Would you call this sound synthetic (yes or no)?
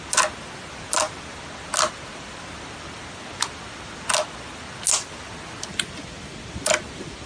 no